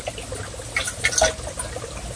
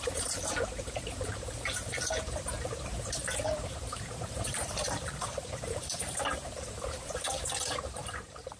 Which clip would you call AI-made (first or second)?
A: second